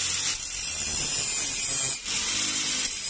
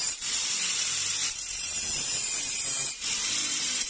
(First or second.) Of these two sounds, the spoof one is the second